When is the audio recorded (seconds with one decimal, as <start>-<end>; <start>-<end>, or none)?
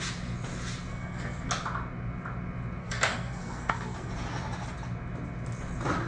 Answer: 0.0-0.9; 1.5-2.8; 4.1-6.1